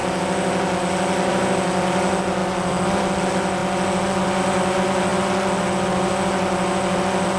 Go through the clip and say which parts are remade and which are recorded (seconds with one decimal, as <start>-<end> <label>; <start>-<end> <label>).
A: 0.0-7.4 recorded